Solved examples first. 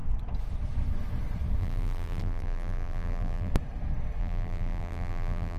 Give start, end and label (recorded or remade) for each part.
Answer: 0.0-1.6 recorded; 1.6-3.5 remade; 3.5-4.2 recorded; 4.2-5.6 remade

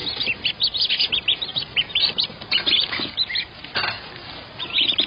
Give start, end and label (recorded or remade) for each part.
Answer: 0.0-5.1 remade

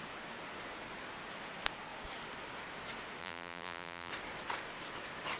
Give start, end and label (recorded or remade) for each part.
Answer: 0.0-3.2 recorded; 3.2-4.1 remade; 4.1-5.4 recorded

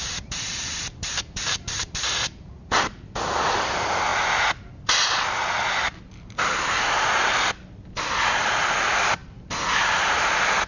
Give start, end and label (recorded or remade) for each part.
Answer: 0.0-3.3 remade; 3.3-10.7 recorded

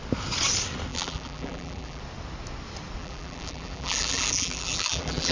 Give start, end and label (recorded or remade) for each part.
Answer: 0.0-0.9 recorded; 0.9-2.0 remade; 2.0-3.0 recorded; 3.0-5.3 remade

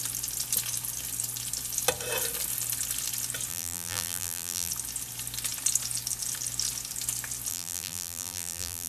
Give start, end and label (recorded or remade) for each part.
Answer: 0.0-3.5 recorded; 3.5-4.7 remade; 4.7-7.5 recorded; 7.5-8.9 remade